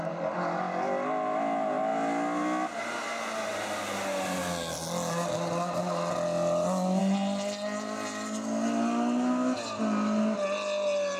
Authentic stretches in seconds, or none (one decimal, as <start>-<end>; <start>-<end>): 0.0-11.2